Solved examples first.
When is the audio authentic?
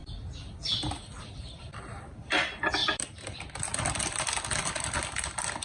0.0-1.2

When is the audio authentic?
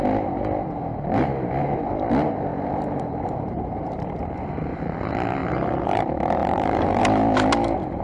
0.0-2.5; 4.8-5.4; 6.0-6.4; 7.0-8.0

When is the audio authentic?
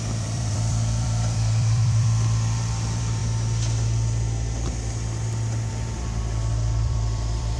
3.2-5.7